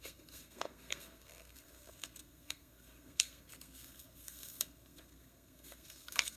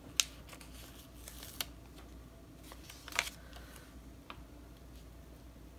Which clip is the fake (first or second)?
first